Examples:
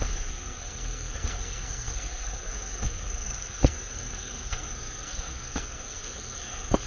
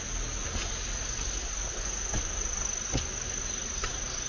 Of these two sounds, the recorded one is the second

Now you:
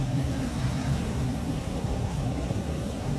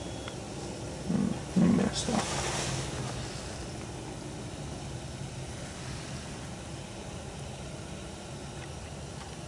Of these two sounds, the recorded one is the second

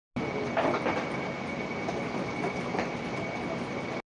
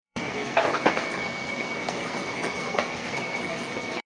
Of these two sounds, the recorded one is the first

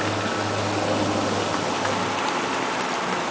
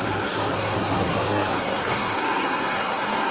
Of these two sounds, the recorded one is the first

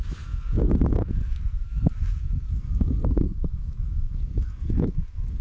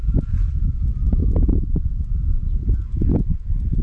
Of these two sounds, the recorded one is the second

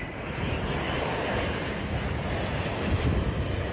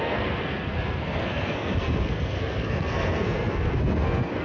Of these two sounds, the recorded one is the first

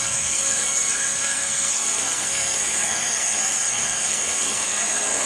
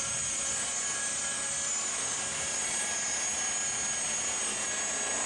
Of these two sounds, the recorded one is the second